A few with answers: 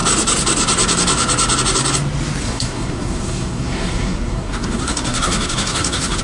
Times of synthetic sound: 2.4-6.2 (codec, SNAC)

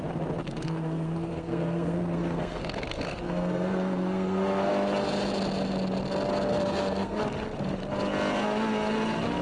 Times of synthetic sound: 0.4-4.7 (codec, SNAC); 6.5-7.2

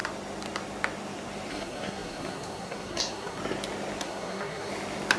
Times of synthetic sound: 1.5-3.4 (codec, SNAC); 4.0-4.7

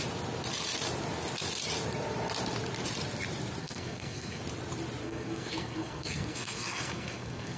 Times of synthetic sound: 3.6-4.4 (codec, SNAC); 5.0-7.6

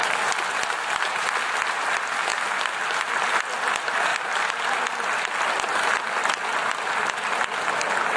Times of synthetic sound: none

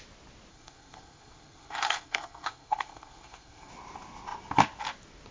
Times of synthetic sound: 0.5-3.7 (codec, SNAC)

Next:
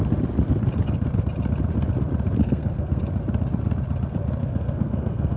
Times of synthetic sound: 2.4-3.0 (codec, SNAC); 4.4-5.4

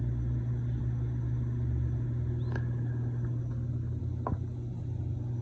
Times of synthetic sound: none